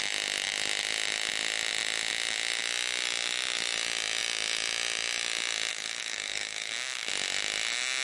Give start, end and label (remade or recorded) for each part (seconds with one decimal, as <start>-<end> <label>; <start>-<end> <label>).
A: 0.0-5.7 recorded; 5.7-7.1 remade; 7.1-8.0 recorded